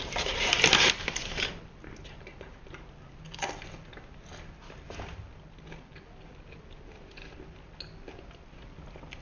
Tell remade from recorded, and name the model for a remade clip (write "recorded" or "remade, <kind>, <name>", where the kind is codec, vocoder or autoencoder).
recorded